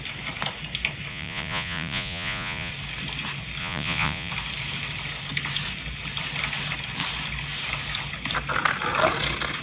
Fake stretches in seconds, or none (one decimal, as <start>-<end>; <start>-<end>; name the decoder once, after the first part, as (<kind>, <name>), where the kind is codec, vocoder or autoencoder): 1.1-2.7 (vocoder, Vocos); 3.6-4.3